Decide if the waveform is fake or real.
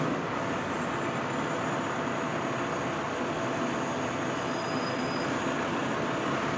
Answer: real